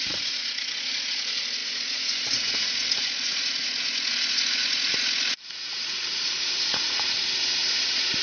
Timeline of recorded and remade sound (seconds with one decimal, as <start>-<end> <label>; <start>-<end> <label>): 0.0-8.2 remade